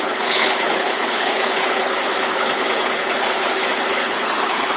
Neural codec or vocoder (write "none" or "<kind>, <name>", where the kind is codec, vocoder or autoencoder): codec, HILCodec